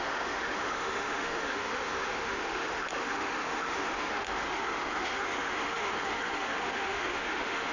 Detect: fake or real fake